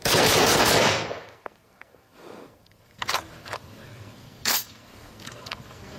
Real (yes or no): no